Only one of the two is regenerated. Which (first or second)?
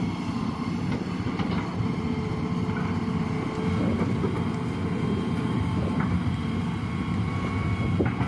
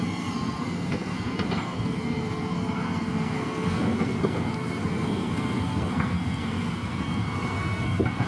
second